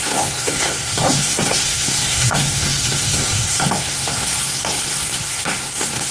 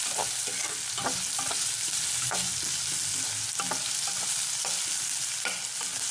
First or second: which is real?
second